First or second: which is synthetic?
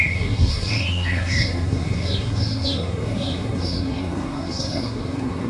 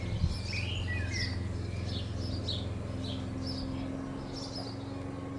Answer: first